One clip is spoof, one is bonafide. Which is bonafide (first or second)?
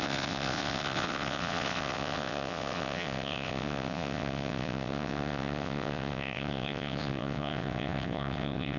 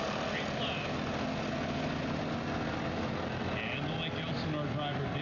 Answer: second